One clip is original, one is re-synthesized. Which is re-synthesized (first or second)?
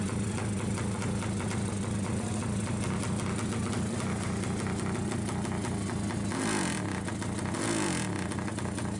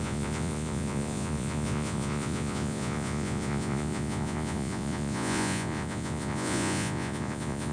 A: second